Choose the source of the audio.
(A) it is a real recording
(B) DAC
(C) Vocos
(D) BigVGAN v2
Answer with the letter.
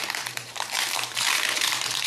D